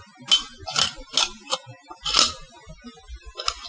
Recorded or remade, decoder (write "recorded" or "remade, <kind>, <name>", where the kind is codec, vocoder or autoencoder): recorded